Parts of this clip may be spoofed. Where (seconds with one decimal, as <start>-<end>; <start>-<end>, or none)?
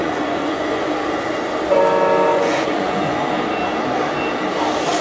0.0-0.9; 2.3-3.3